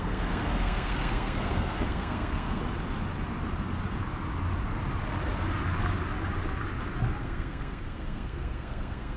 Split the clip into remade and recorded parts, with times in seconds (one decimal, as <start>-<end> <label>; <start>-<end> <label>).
0.0-2.6 remade; 2.6-7.2 recorded; 7.2-9.2 remade